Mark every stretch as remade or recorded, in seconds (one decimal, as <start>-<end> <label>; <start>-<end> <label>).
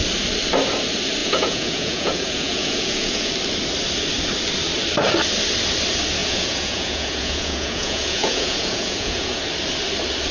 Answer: 0.0-1.2 recorded; 1.2-3.3 remade; 3.3-6.2 recorded; 6.2-9.4 remade; 9.4-10.3 recorded